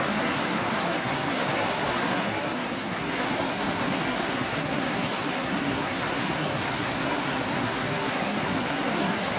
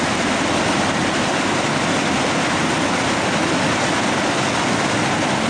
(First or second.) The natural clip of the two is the second